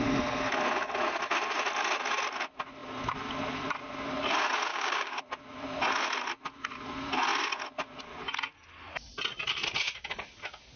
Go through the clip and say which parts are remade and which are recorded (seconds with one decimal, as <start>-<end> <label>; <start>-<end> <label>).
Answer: 0.0-4.7 recorded; 4.7-5.2 remade; 5.2-10.8 recorded